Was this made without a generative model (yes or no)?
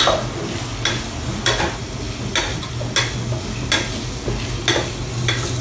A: yes